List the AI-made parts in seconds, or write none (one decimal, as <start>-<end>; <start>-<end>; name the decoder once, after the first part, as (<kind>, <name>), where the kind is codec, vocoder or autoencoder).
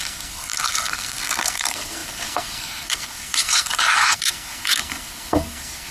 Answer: 0.0-5.9 (codec, SNAC)